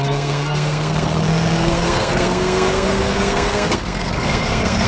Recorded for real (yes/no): no